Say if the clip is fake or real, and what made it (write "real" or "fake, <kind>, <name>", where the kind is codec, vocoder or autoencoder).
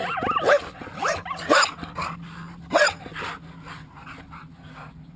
real